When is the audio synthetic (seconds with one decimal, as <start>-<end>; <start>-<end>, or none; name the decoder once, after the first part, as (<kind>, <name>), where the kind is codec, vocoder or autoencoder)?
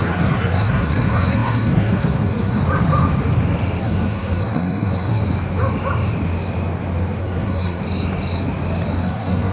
0.0-2.6 (codec, SNAC); 3.8-5.2; 7.2-7.8; 9.0-9.5